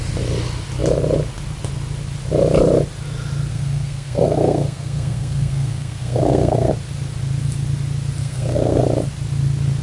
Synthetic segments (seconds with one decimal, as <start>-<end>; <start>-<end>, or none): 3.5-6.7; 8.2-8.8

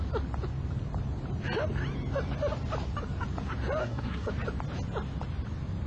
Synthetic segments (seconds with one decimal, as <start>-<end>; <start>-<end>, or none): 3.8-4.3

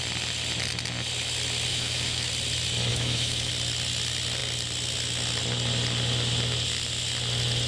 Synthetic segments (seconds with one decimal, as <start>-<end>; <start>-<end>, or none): 1.7-2.3; 2.9-3.5

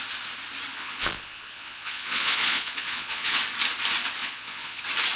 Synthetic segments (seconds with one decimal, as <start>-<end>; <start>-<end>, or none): 0.7-3.4; 4.2-4.8

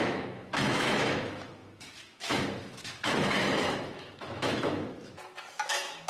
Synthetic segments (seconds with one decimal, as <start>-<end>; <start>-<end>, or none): 0.0-6.1

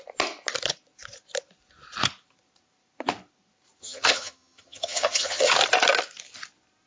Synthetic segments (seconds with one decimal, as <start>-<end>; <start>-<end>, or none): 3.8-5.5